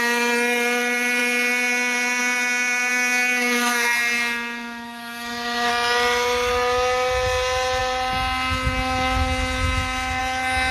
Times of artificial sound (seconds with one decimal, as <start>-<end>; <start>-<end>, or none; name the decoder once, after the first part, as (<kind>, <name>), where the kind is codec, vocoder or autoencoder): 2.9-5.7 (codec, SNAC)